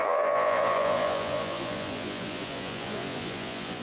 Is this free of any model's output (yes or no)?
no